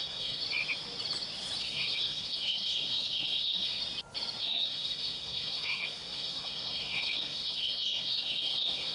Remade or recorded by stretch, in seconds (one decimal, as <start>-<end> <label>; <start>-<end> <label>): 0.0-0.4 remade; 0.4-1.6 recorded; 1.6-3.8 remade; 3.8-4.4 recorded; 4.4-8.9 remade